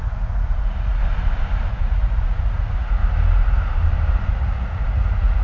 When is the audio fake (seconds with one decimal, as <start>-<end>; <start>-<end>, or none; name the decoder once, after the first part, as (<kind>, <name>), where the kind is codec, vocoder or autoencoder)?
0.0-1.0 (vocoder, Vocos); 1.7-3.0; 4.3-5.4

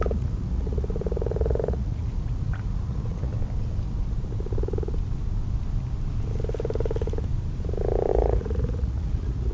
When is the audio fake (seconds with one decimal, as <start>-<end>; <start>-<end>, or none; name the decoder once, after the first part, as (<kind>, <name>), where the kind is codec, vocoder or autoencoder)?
0.0-3.3 (vocoder, Vocos); 8.1-9.5

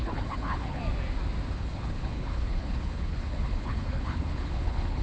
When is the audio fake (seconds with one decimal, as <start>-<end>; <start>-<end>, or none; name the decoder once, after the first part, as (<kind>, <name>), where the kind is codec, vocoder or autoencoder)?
0.0-0.8 (codec, HILCodec); 1.5-5.0

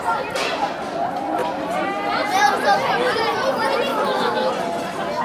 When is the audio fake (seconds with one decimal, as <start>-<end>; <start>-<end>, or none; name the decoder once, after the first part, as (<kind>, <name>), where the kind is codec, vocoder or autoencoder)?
3.9-4.5 (autoencoder, DAC-VAE)

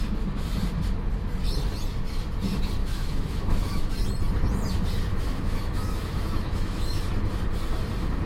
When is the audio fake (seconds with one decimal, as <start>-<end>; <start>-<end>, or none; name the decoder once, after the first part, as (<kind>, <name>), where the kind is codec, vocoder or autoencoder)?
2.8-3.9 (autoencoder, DAC-VAE); 5.1-7.1

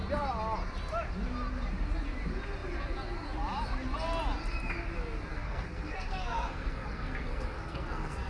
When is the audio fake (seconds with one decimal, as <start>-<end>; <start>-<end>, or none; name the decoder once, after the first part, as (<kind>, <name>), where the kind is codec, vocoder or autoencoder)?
5.3-8.3 (codec, SNAC)

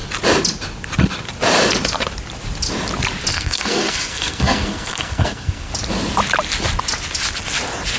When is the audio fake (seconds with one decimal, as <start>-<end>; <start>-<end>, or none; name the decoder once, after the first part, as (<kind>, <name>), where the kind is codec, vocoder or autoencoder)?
3.3-5.7 (codec, SNAC)

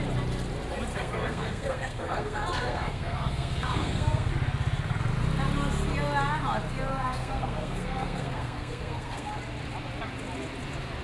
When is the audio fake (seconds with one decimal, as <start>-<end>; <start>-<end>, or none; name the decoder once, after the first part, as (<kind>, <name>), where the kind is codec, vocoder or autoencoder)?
0.9-4.3 (codec, SNAC); 6.9-9.4